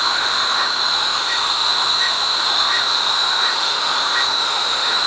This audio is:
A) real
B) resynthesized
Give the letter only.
B